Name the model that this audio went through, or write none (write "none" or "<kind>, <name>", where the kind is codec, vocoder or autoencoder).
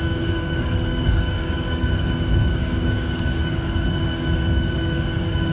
codec, DAC